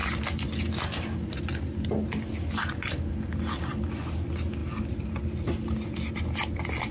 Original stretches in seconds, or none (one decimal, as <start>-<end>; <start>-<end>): 0.0-6.9